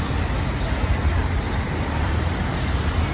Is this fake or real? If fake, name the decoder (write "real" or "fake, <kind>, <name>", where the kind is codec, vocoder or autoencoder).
fake, vocoder, BigVGAN v2